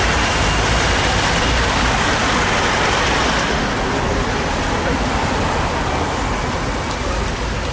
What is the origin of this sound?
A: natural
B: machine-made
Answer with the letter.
A